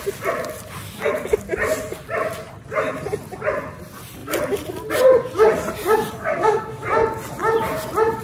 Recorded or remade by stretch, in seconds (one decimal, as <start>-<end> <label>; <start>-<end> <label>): 0.0-6.2 recorded; 6.2-6.8 remade; 6.8-8.2 recorded